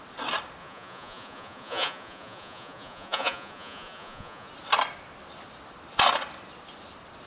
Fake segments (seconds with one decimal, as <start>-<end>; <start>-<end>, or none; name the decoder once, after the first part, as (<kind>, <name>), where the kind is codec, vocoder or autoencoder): 0.6-4.5 (vocoder, Vocos)